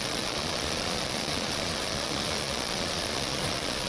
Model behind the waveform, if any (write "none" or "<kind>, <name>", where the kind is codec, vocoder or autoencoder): vocoder, Vocos